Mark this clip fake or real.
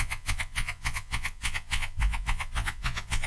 fake